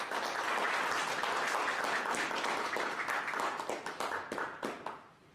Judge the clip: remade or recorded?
recorded